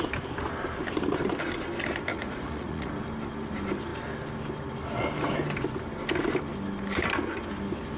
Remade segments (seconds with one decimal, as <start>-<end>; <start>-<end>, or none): 2.1-2.9